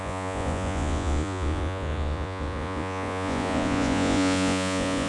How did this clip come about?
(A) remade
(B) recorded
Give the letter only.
A